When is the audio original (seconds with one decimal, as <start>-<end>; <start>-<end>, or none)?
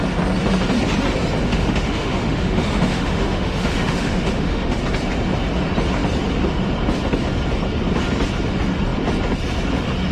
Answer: 0.0-1.4; 4.8-10.1